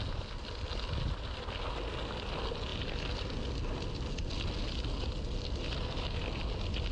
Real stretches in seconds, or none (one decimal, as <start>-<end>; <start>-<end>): 0.0-6.9